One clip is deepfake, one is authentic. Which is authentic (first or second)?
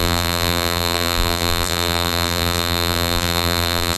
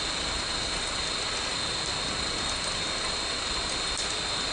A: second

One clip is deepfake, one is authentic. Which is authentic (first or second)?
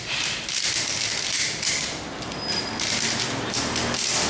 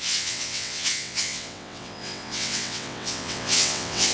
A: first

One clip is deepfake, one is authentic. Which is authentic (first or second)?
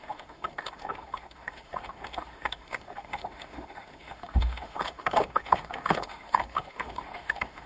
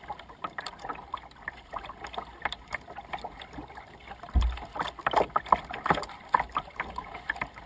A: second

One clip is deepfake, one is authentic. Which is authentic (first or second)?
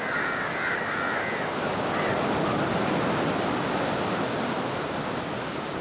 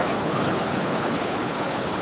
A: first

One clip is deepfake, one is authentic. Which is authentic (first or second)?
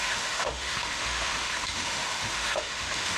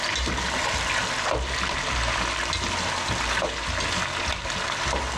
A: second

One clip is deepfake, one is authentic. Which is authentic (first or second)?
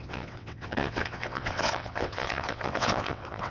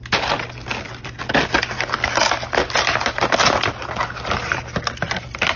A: second